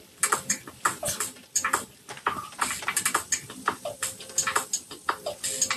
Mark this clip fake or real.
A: real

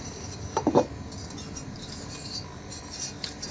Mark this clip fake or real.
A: real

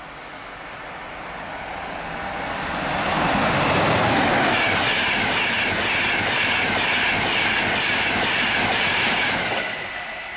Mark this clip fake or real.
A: real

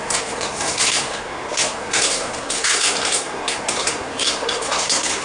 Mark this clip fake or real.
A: fake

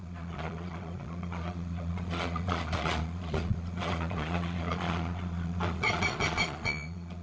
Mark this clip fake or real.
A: fake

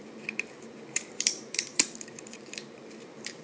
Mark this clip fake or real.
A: fake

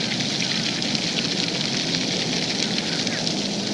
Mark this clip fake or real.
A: real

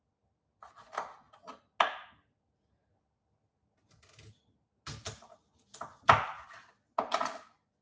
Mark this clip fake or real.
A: real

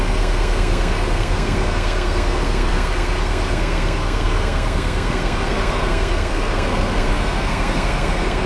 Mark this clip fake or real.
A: fake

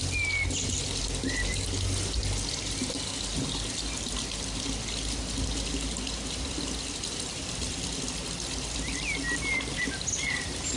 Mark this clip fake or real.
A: real